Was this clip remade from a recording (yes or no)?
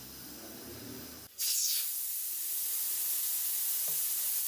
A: no